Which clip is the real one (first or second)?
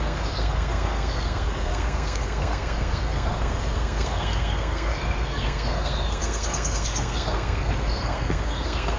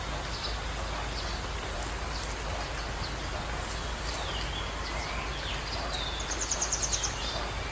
second